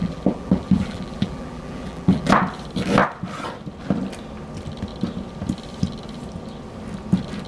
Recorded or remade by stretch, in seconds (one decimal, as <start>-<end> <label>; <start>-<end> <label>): 0.0-2.3 remade; 2.3-7.5 recorded